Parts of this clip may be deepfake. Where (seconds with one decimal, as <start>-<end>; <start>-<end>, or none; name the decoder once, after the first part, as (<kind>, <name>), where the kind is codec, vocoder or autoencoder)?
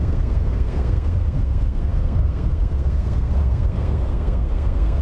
0.0-5.0 (codec, SNAC)